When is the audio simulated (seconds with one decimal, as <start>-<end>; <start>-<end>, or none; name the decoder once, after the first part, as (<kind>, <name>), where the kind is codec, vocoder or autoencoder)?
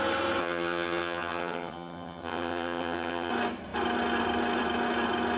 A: 0.4-3.3 (vocoder, HiFi-GAN)